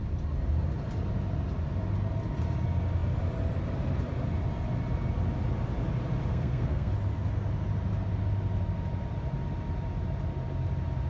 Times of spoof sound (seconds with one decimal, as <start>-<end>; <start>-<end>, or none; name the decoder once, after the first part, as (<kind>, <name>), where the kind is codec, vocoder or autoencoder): 6.3-6.9 (codec, SNAC)